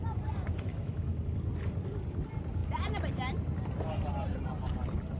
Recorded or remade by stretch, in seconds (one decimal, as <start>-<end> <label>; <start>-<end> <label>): 0.0-0.7 recorded; 0.7-1.2 remade; 1.2-5.2 recorded

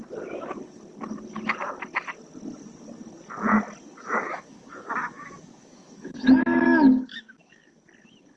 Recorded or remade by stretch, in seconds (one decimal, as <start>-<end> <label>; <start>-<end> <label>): 0.0-4.0 recorded; 4.0-7.8 remade; 7.8-8.4 recorded

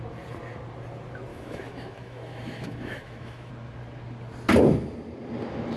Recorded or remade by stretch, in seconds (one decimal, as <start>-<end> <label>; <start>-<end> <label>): 0.0-1.3 recorded; 1.3-3.5 remade; 3.5-5.8 recorded

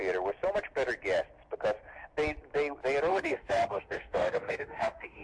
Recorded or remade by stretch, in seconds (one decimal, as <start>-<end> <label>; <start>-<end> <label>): 0.0-3.1 recorded; 3.1-5.2 remade